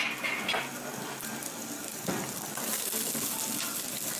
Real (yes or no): yes